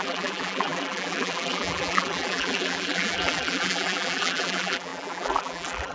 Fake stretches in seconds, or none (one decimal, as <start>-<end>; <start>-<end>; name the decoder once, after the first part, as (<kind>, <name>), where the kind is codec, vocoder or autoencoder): 0.0-5.9 (vocoder, BigVGAN v2)